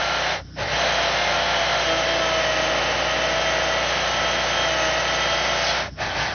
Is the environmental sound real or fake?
real